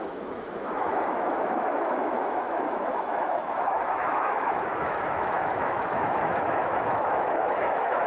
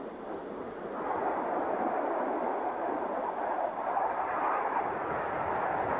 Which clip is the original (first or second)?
second